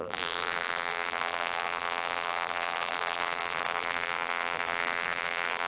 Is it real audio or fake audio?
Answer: fake